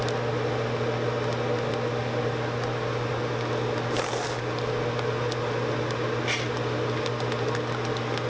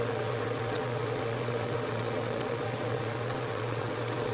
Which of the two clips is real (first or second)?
first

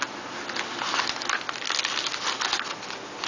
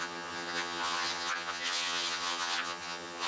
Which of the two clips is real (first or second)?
first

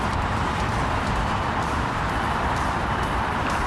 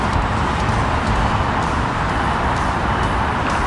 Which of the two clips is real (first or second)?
second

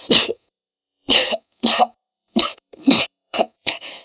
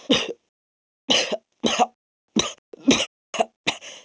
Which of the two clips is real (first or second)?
second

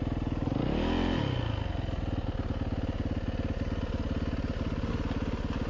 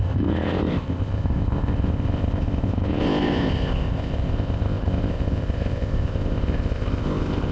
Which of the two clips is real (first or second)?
first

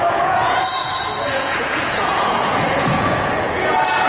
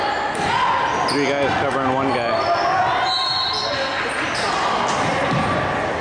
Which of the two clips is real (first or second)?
second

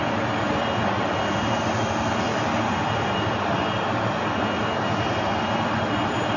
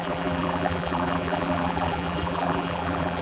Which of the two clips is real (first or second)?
first